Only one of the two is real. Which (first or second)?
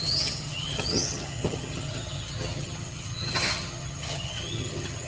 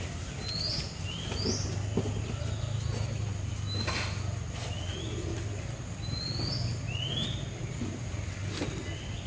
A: second